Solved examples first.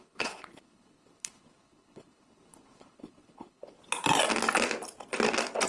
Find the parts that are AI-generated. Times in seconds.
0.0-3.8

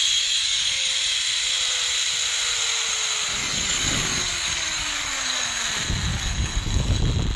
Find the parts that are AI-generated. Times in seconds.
0.0-0.9; 3.4-5.6; 6.1-7.0

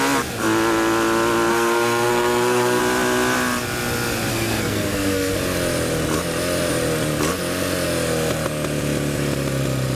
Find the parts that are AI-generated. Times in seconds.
1.5-2.8; 4.3-5.3